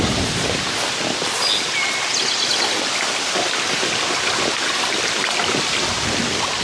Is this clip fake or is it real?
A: real